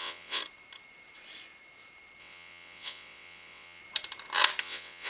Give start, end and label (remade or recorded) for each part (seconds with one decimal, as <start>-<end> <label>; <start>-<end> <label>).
0.0-0.4 remade; 0.4-2.2 recorded; 2.2-3.8 remade; 3.8-4.6 recorded; 4.6-5.1 remade